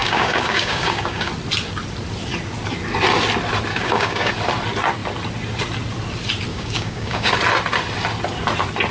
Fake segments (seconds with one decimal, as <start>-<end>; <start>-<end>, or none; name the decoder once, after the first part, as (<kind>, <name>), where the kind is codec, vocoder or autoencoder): 0.0-1.3 (codec, DAC); 3.7-4.3; 6.5-7.3